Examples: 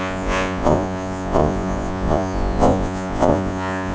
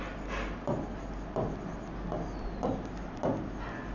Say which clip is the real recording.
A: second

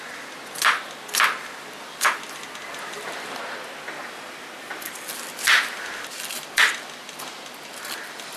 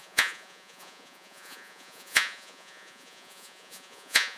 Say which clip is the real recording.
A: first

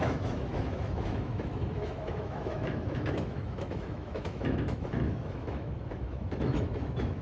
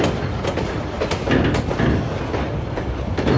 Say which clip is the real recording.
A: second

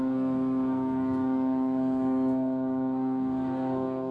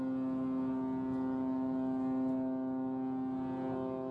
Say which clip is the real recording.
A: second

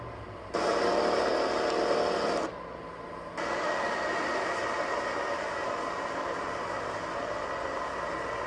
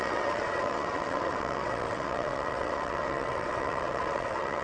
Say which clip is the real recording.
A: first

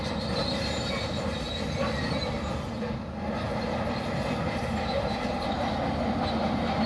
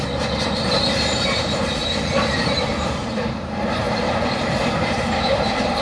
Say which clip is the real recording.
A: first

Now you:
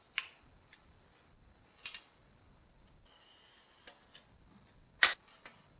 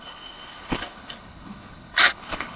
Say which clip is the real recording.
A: first